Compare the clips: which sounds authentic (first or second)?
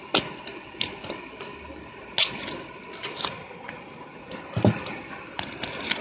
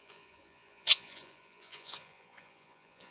first